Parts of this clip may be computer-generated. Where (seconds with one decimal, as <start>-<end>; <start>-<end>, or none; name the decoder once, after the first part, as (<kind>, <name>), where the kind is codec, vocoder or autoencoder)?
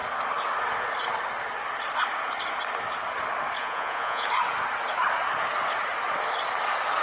3.6-4.3 (vocoder, Vocos)